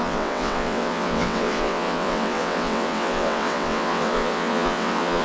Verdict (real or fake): fake